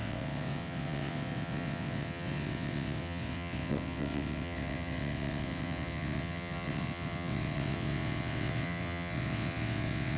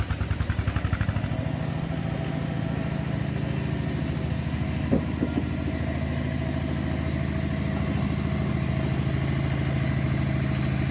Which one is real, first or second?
second